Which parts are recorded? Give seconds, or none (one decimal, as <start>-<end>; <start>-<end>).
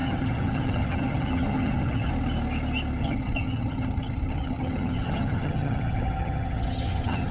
2.1-3.0